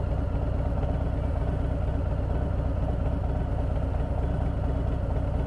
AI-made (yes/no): no